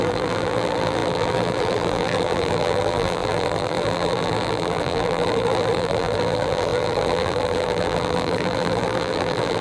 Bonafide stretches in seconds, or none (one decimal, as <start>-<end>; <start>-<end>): none

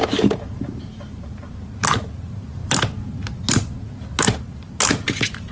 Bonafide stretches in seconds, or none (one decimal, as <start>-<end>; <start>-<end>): none

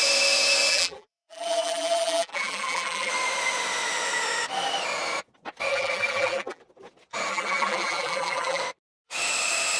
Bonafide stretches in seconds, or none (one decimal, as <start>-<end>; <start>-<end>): 0.0-0.7; 3.1-5.7; 6.6-7.3; 8.6-9.8

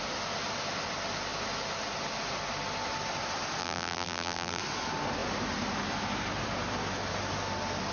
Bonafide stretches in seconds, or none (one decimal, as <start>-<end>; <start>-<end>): 0.0-3.6; 4.6-7.9